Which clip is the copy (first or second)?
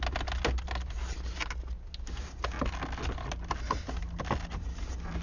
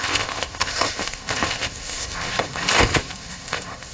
second